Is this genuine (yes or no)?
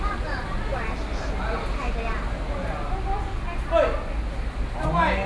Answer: yes